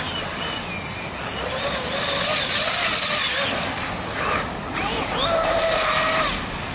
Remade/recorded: recorded